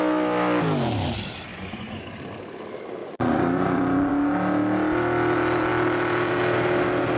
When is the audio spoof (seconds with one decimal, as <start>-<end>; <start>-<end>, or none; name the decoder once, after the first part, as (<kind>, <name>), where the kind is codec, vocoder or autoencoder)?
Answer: 1.5-2.1 (vocoder, Vocos); 3.0-4.1